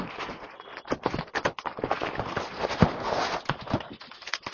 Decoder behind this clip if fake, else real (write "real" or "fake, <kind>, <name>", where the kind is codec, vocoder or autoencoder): real